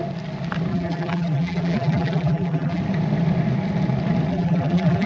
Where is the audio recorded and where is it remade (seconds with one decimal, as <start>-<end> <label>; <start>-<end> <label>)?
0.0-0.7 recorded; 0.7-2.8 remade; 2.8-4.3 recorded; 4.3-5.1 remade